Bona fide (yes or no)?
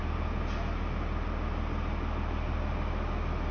yes